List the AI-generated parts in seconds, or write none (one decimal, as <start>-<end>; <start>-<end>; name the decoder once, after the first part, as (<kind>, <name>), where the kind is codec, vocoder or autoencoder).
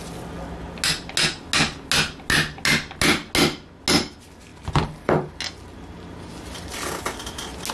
4.5-5.3 (vocoder, BigVGAN v2)